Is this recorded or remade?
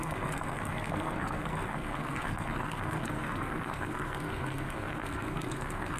remade